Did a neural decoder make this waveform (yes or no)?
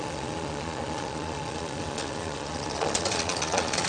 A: yes